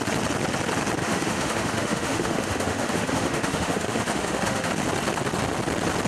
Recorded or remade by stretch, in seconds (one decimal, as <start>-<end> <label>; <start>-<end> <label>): 0.0-1.0 recorded; 1.0-4.7 remade; 4.7-6.1 recorded